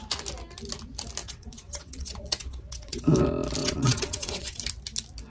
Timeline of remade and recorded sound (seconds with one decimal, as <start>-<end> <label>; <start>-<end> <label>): 0.0-1.2 recorded; 1.2-3.0 remade; 3.0-3.6 recorded; 3.6-4.6 remade; 4.6-5.3 recorded